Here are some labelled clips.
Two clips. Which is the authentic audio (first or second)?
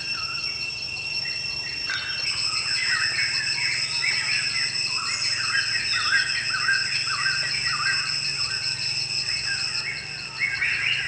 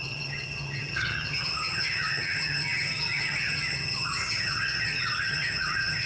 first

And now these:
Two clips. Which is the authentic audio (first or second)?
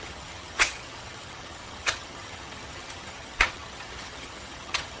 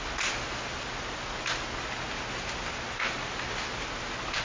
second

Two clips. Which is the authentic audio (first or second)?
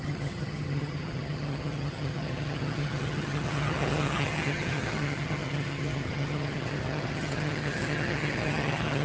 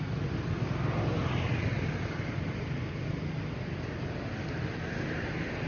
second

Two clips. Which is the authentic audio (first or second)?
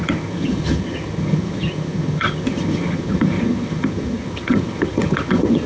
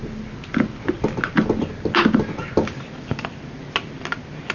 second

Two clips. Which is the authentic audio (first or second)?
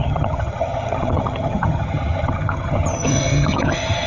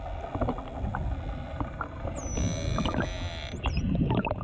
second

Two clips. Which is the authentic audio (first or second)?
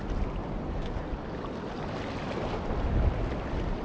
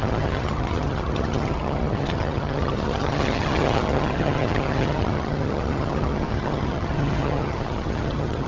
first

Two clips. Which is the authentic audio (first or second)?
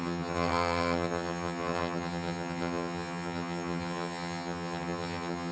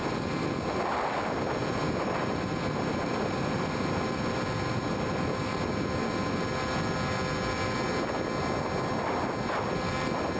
second